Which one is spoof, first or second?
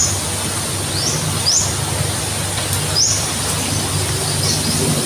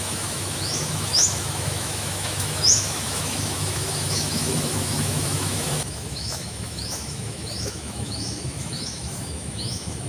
second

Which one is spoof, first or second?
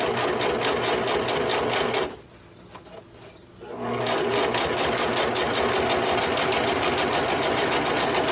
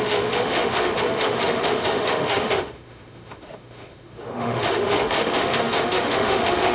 second